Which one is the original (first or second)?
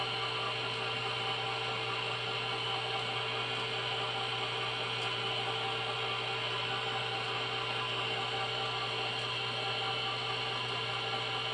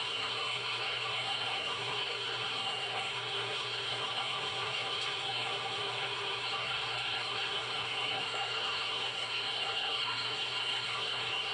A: first